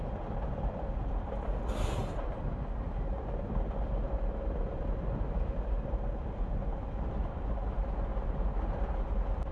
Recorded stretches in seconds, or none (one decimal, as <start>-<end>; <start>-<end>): 2.0-7.1